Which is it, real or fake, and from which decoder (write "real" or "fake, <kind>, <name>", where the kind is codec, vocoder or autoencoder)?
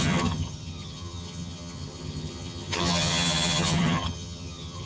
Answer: fake, vocoder, HiFi-GAN